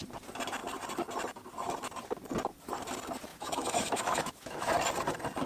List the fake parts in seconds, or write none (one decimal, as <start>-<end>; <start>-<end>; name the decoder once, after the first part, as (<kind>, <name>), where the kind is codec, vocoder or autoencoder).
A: 3.3-4.7 (autoencoder, DAC-VAE)